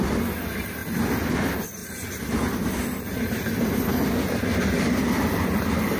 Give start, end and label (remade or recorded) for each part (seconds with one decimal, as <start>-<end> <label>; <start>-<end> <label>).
0.0-0.8 recorded; 0.8-1.3 remade; 1.3-1.8 recorded; 1.8-3.7 remade; 3.7-6.0 recorded

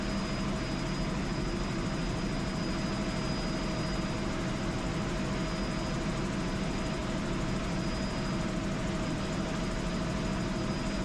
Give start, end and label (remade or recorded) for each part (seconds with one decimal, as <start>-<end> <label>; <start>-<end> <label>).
0.0-7.0 recorded; 7.0-9.2 remade; 9.2-11.0 recorded

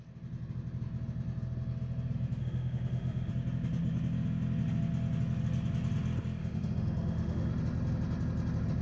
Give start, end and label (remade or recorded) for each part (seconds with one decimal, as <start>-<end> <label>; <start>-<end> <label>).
0.0-2.4 recorded; 2.4-3.3 remade; 3.3-6.4 recorded; 6.4-7.5 remade; 7.5-8.8 recorded

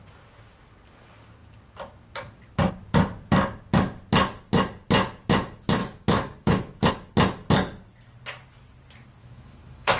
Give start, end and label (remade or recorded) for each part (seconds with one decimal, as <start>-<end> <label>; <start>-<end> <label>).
0.0-5.8 recorded; 5.8-6.9 remade; 6.9-9.2 recorded; 9.2-10.0 remade

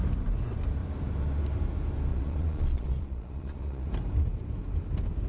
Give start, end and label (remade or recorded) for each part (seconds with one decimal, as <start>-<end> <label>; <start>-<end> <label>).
0.0-2.1 recorded; 2.1-3.9 remade; 3.9-5.3 recorded

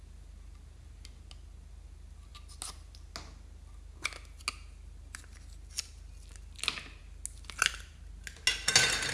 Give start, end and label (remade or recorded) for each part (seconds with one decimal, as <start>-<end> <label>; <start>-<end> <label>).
0.0-9.1 recorded

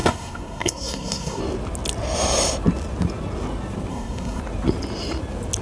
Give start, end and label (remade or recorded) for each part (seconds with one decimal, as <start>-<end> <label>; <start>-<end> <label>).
0.0-1.4 remade; 1.4-3.9 recorded; 3.9-4.4 remade; 4.4-5.6 recorded